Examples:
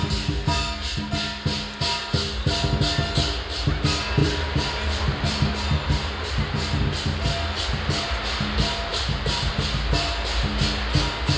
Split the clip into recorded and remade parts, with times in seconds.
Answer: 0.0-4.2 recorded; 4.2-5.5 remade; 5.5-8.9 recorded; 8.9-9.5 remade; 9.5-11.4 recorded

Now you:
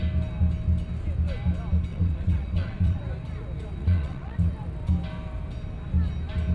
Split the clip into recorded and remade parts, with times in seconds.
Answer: 0.0-1.9 recorded; 1.9-3.0 remade; 3.0-3.8 recorded; 3.8-4.5 remade; 4.5-6.5 recorded

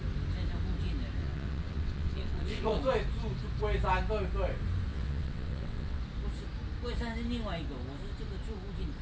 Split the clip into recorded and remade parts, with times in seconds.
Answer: 0.0-1.2 recorded; 1.2-2.8 remade; 2.8-4.9 recorded; 4.9-6.0 remade; 6.0-9.0 recorded

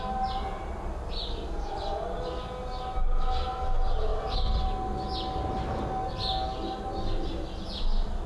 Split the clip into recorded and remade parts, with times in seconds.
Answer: 0.0-8.3 recorded

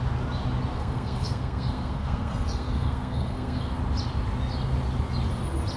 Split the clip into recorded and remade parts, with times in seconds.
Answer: 0.0-0.7 recorded; 0.7-3.8 remade; 3.8-5.8 recorded

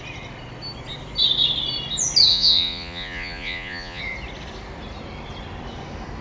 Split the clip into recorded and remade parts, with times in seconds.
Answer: 0.0-2.3 recorded; 2.3-4.0 remade; 4.0-6.2 recorded

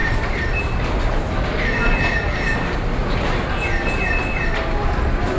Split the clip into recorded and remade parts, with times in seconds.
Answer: 0.0-5.4 recorded

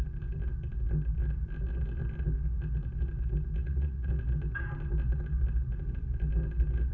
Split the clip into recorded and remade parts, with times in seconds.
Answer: 0.0-3.6 recorded; 3.6-4.1 remade; 4.1-6.9 recorded